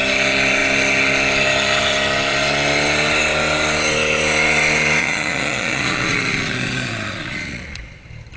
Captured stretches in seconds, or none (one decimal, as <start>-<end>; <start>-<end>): 0.0-5.0; 7.8-8.4